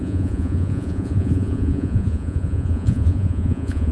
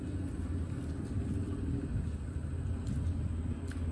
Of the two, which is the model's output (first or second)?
first